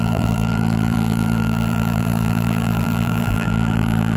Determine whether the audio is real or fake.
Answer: fake